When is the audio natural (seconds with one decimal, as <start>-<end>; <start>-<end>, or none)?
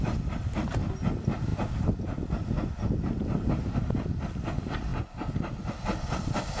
0.0-6.6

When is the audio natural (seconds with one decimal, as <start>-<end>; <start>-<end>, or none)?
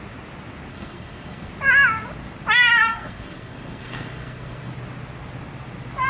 0.0-0.7; 1.5-2.8; 4.7-6.1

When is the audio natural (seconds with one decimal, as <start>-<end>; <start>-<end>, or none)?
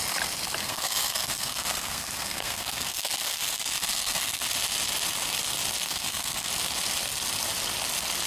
0.0-0.6; 4.5-5.9; 6.5-8.3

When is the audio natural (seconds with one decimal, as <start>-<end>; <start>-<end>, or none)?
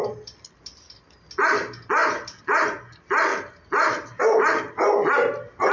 0.0-5.7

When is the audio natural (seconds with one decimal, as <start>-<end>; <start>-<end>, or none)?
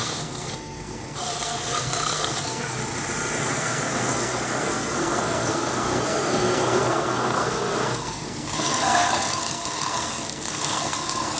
2.8-3.4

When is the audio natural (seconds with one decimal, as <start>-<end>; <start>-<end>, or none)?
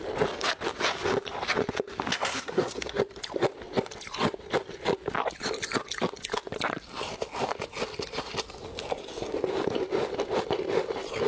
0.0-2.1; 3.0-11.3